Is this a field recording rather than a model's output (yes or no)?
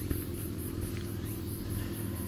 yes